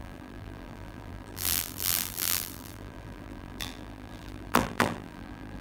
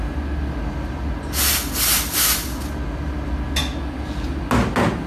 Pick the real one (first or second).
second